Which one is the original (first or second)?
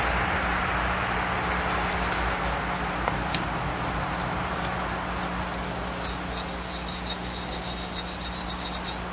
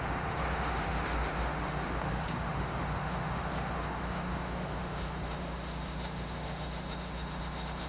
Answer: first